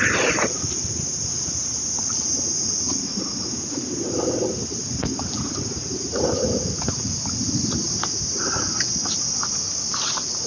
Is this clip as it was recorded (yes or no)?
no